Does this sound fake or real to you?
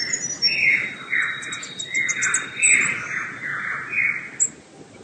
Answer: real